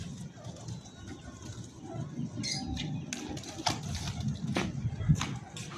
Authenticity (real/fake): real